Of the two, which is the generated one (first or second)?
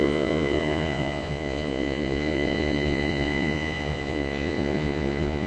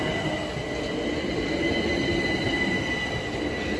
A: first